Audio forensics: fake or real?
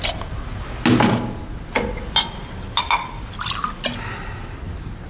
real